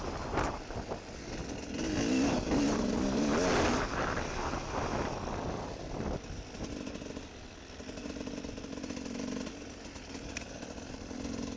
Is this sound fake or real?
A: real